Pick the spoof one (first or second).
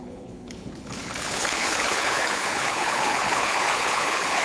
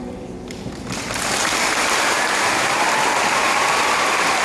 first